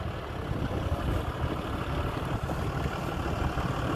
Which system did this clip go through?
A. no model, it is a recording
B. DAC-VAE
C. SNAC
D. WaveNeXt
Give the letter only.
A